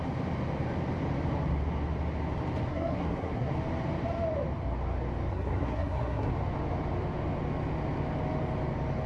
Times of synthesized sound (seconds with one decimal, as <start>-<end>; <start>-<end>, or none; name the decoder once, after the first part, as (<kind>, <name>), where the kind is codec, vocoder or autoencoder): 2.7-3.5 (codec, SNAC); 5.3-6.3